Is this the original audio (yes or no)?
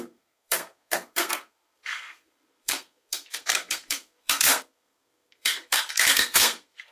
no